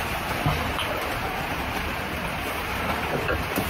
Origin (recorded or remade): recorded